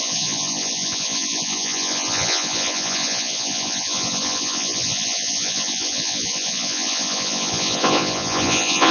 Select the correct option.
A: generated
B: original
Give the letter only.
A